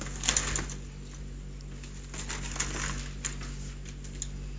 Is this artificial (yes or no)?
no